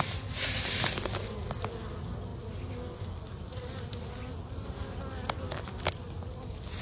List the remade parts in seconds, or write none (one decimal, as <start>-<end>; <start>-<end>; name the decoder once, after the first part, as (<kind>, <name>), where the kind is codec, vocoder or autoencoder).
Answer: none